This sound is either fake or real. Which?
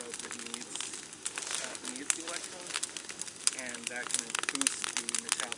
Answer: real